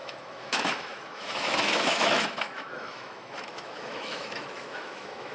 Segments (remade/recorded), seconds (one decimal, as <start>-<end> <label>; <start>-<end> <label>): 0.0-5.3 remade